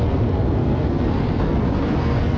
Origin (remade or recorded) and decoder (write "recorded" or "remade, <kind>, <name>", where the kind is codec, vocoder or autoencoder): remade, codec, SNAC